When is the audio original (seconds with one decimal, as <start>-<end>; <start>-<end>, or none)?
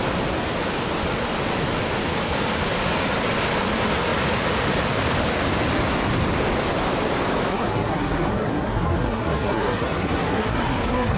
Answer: 0.0-7.5